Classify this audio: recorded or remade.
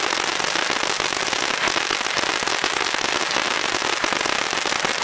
recorded